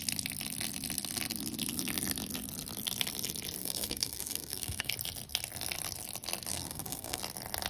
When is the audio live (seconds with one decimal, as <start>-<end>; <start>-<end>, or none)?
0.0-3.6; 4.9-6.5; 7.2-7.7

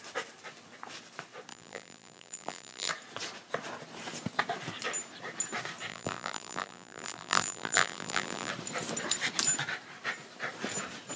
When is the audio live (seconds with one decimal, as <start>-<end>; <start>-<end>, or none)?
0.0-1.5; 2.9-5.9; 8.5-11.2

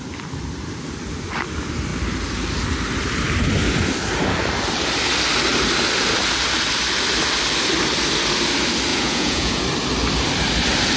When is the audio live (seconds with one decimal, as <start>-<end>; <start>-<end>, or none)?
0.0-8.9; 9.6-11.0

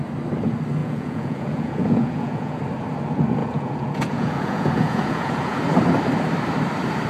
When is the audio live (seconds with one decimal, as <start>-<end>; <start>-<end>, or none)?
0.0-0.8; 2.6-3.4; 5.6-7.1

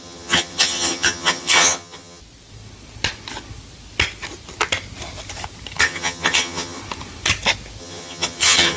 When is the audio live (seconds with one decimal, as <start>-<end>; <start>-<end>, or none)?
2.2-5.8; 6.8-7.8

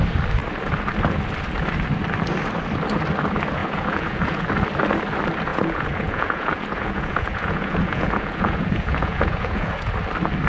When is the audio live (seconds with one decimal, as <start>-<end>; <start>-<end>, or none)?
0.0-3.6; 4.5-5.5; 9.9-10.5

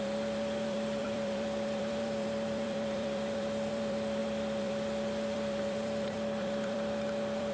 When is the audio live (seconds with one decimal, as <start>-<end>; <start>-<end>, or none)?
none